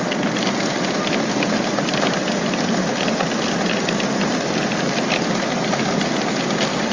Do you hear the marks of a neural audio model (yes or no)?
no